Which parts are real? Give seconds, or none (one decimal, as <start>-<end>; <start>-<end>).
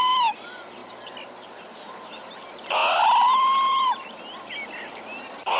0.0-5.6